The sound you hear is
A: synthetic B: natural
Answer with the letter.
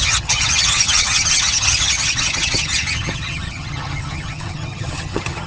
A